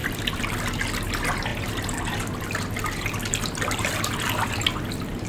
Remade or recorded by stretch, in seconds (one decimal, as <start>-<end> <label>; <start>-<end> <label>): 0.0-5.3 recorded